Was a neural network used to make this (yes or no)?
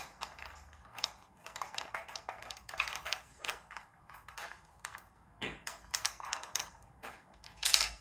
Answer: yes